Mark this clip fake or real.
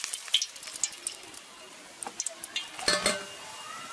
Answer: real